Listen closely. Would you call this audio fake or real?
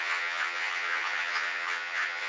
fake